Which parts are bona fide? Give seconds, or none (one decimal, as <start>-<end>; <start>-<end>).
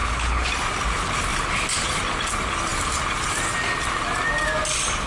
0.5-5.1